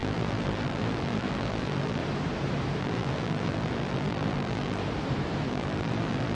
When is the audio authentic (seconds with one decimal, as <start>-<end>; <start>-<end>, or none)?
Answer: 2.0-2.8; 4.8-5.5